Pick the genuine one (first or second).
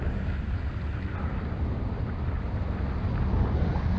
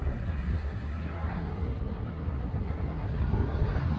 first